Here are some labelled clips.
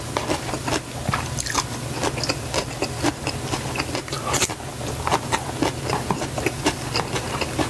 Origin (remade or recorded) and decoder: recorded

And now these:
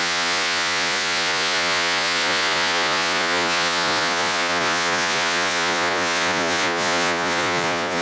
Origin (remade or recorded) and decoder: remade, vocoder, Vocos